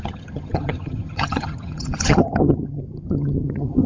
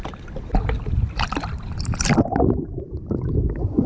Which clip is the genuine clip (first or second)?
second